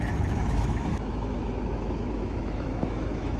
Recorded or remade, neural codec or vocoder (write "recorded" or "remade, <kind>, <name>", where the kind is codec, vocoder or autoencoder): remade, autoencoder, DAC-VAE